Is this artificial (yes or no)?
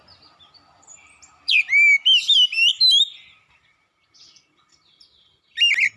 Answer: no